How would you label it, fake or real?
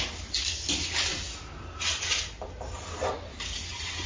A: real